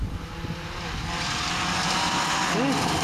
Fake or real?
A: real